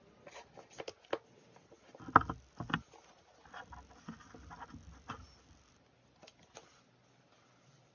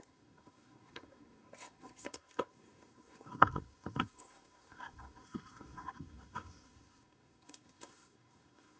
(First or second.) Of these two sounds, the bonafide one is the first